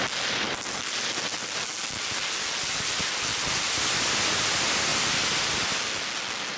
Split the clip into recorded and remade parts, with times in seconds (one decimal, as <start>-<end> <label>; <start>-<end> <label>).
0.0-6.6 recorded